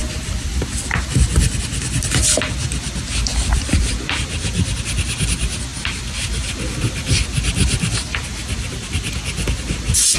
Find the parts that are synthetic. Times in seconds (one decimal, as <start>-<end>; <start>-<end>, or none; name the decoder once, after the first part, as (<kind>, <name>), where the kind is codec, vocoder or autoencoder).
0.0-1.6 (vocoder, BigVGAN v2); 3.3-3.9